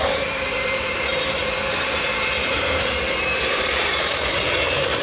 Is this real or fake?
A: fake